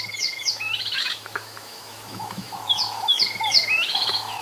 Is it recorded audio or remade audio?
remade